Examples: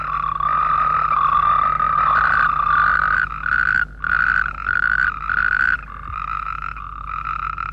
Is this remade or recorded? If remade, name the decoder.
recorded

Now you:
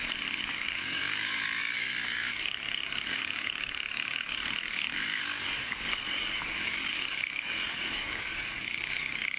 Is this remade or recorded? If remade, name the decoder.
remade, codec, DAC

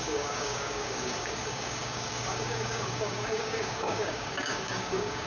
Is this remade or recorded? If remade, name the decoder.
remade, codec, DAC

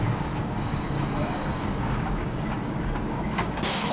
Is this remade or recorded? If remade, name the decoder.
remade, codec, DAC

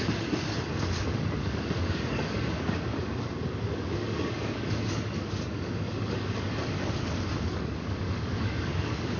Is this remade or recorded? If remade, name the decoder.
remade, codec, DAC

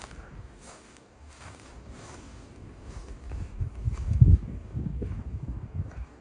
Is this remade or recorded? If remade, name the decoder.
remade, codec, DAC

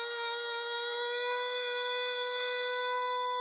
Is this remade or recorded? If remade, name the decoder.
remade, codec, DAC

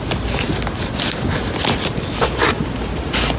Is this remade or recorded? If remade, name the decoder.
recorded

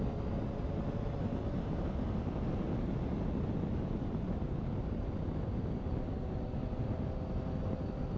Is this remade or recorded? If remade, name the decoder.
recorded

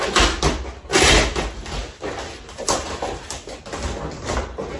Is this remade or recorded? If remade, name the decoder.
recorded